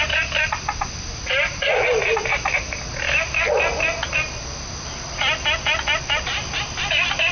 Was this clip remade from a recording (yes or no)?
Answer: no